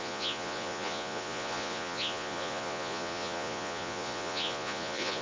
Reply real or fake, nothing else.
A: fake